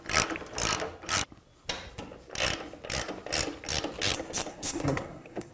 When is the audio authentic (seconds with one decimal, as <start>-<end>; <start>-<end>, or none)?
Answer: 0.0-4.5